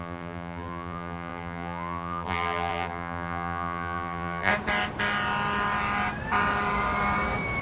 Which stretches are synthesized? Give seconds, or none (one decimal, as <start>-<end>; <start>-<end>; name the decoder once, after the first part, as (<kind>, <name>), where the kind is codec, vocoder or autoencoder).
0.0-4.5 (vocoder, BigVGAN v2)